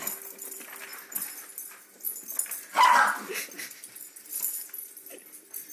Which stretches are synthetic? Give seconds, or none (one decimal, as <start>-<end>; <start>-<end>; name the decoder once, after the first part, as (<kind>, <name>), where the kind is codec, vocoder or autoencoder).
0.0-0.9 (vocoder, BigVGAN v2); 2.6-5.7